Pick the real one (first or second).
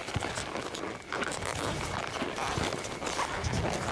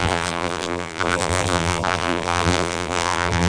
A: first